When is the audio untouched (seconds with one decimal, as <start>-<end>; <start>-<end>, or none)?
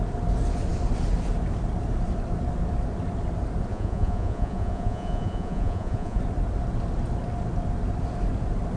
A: 0.0-3.7; 6.2-8.8